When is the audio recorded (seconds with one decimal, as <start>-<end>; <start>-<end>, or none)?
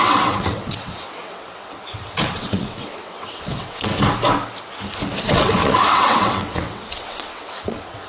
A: 3.9-5.2